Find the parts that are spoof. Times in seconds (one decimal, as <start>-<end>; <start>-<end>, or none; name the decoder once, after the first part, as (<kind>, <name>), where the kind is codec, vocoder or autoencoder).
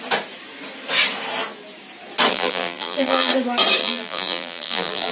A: 2.3-3.3 (vocoder, BigVGAN v2); 3.8-5.1